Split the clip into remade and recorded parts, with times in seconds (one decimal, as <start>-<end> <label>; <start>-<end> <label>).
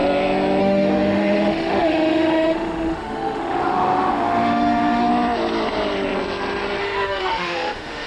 0.0-0.6 recorded; 0.6-5.1 remade; 5.1-6.8 recorded; 6.8-8.1 remade